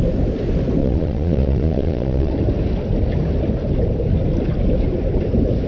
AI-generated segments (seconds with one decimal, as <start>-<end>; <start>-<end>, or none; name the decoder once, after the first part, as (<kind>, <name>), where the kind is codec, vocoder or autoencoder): 0.8-2.3 (vocoder, Vocos)